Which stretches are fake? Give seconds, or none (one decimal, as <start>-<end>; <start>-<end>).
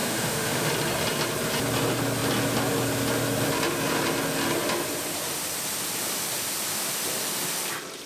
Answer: 0.0-0.7